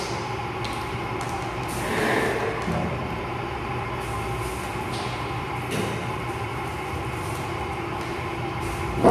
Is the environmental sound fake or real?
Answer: real